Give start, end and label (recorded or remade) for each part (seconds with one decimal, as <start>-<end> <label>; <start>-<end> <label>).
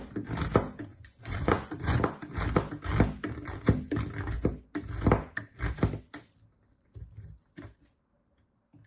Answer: 0.0-0.9 recorded; 0.9-2.0 remade; 2.0-8.9 recorded